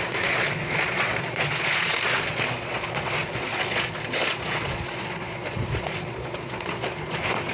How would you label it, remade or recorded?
remade